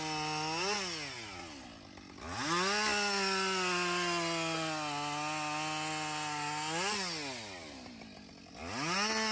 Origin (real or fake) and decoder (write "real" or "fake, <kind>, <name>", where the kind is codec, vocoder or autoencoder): real